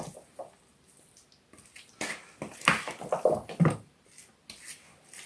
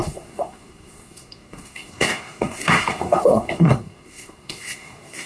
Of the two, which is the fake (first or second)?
second